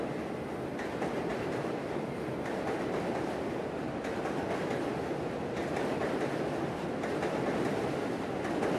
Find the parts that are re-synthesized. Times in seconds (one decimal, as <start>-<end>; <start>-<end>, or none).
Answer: 1.3-4.7